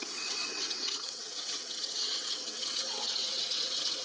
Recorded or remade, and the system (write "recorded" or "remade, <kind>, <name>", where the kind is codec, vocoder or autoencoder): remade, vocoder, WaveNeXt